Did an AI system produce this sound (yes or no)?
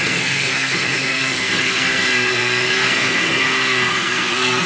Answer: yes